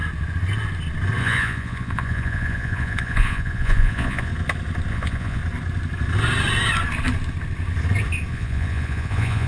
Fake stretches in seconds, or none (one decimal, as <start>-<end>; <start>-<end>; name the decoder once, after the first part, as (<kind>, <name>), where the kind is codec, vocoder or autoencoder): 1.2-4.3 (vocoder, Vocos); 4.9-5.4; 8.3-9.5